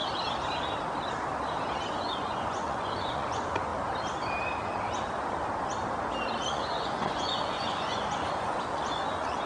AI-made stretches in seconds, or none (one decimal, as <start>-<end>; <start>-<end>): 1.9-3.7; 6.5-9.5